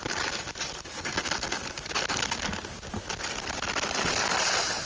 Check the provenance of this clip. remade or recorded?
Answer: recorded